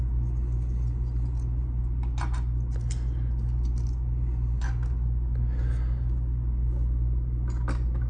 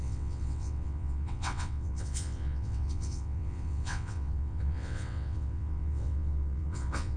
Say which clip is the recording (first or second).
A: first